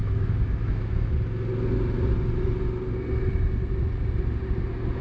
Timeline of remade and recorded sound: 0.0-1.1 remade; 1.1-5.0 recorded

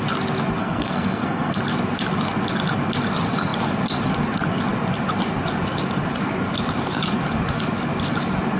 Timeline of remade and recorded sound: 0.0-0.6 recorded; 0.6-1.6 remade; 1.6-8.6 recorded

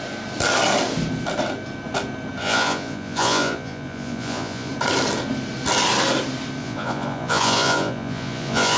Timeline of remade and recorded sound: 0.0-2.4 recorded; 2.4-4.7 remade; 4.7-6.6 recorded; 6.6-8.8 remade